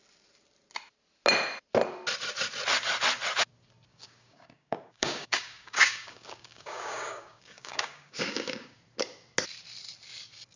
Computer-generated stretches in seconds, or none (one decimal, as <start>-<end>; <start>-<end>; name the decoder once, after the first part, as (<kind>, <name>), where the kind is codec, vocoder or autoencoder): 3.9-8.8 (codec, DAC)